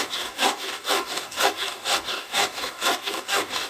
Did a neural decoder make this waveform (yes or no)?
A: yes